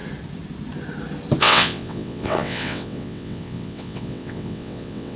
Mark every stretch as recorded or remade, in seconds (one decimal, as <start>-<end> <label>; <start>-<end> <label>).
0.0-1.4 recorded; 1.4-5.2 remade